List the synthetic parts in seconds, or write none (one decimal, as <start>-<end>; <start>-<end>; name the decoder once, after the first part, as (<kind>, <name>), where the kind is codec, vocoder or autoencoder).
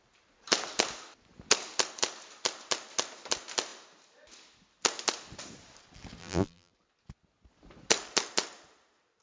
6.2-6.7 (vocoder, BigVGAN v2)